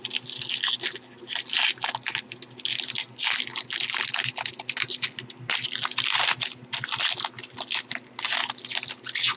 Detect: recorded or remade recorded